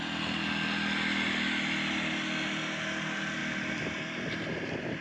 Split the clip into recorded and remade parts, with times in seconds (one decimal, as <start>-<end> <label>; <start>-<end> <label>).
0.0-3.4 recorded; 3.4-4.5 remade; 4.5-5.0 recorded